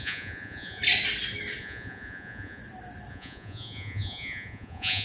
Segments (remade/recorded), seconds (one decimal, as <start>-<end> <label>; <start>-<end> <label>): 0.0-0.8 remade; 0.8-1.6 recorded; 1.6-2.6 remade; 2.6-3.1 recorded; 3.1-5.0 remade